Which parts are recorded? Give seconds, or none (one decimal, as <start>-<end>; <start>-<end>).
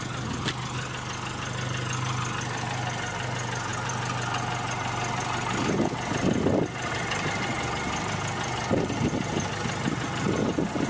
0.0-10.9